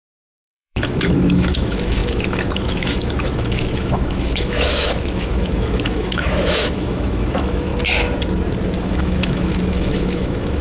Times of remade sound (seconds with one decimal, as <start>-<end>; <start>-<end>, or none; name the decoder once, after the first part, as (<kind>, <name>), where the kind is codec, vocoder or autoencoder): 0.0-7.7 (autoencoder, DAC-VAE); 8.8-10.6

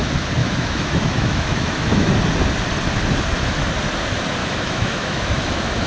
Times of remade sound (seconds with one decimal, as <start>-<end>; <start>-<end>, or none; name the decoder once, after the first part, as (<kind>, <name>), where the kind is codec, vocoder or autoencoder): 0.4-2.1 (autoencoder, DAC-VAE); 4.4-5.9

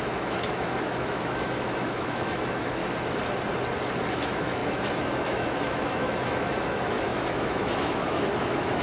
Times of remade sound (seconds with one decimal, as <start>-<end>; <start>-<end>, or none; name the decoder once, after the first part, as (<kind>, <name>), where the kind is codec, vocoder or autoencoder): 0.0-2.8 (autoencoder, DAC-VAE); 4.1-8.8